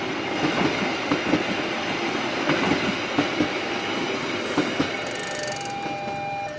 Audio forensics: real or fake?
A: real